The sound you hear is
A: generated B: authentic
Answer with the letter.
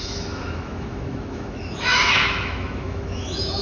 A